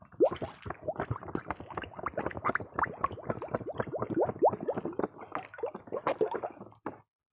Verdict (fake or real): real